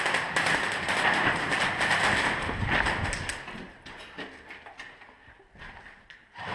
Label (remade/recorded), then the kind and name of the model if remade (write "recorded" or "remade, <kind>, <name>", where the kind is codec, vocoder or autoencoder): recorded